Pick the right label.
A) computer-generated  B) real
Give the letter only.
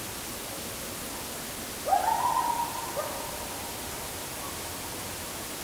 B